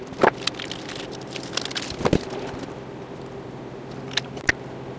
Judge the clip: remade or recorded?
recorded